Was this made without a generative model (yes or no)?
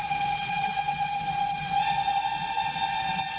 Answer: no